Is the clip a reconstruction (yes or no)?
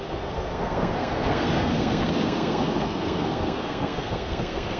yes